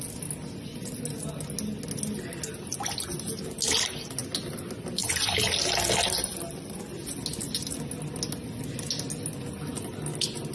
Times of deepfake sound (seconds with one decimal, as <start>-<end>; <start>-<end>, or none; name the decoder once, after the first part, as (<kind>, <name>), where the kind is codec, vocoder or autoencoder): none